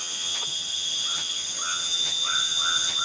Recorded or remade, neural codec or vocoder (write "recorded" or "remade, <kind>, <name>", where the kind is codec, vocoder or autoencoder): remade, vocoder, HiFi-GAN